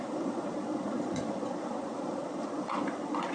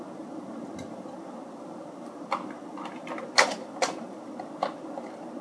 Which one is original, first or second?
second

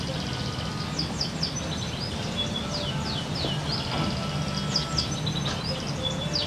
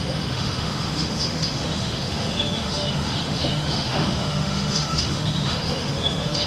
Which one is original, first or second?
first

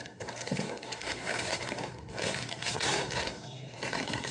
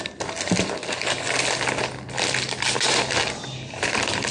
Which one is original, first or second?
second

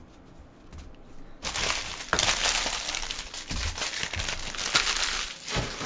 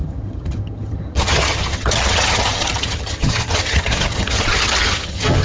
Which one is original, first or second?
first